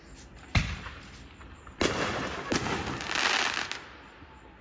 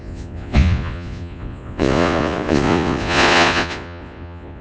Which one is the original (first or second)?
first